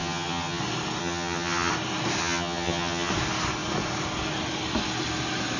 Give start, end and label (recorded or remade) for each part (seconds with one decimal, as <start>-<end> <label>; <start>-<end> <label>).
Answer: 0.0-0.6 remade; 0.6-1.0 recorded; 1.0-1.7 remade; 1.7-2.2 recorded; 2.2-3.1 remade; 3.1-5.6 recorded

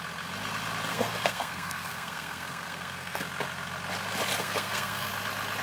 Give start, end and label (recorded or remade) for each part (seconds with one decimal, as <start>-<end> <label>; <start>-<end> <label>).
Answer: 0.0-0.9 recorded; 0.9-3.2 remade; 3.2-4.4 recorded; 4.4-5.1 remade; 5.1-5.6 recorded